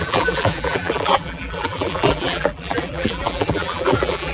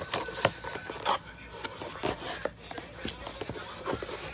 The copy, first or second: first